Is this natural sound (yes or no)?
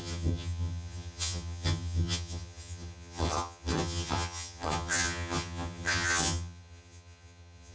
no